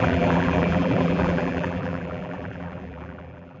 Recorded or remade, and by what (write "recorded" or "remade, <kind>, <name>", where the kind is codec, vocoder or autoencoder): remade, vocoder, BigVGAN v2